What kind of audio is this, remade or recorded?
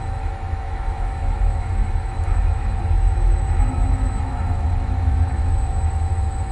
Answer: remade